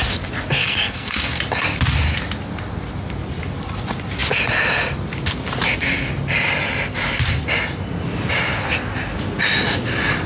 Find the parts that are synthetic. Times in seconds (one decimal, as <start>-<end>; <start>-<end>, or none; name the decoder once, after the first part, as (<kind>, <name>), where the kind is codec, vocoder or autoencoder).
0.6-1.4 (codec, SNAC)